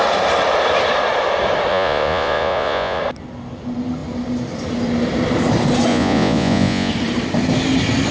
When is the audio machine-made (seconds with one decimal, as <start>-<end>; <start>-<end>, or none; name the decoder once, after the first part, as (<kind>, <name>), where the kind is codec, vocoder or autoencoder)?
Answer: 1.7-3.0 (vocoder, Vocos); 5.9-6.9